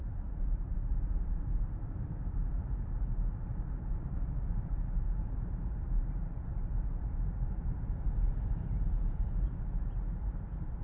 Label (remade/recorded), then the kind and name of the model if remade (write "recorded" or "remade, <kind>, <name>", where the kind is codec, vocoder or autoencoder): remade, vocoder, BigVGAN v2